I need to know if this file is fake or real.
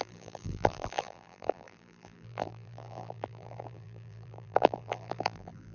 fake